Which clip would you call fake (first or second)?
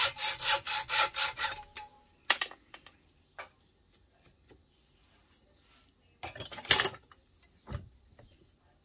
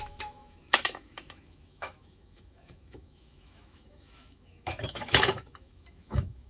second